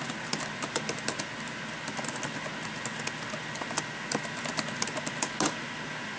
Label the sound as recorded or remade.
recorded